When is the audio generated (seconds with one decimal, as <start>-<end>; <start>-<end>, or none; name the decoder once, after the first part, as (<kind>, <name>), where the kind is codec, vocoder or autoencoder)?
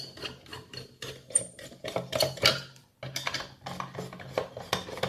0.5-2.9 (vocoder, BigVGAN v2)